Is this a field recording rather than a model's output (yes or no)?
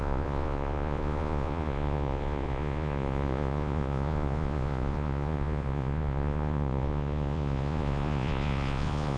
no